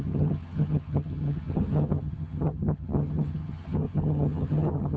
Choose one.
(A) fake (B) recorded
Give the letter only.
A